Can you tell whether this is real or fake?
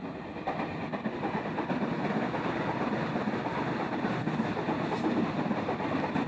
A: real